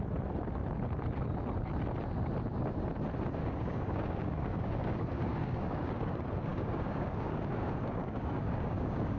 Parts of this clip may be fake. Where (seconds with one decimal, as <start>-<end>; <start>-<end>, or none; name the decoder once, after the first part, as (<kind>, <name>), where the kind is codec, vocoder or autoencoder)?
3.4-6.1 (codec, DAC); 6.5-9.2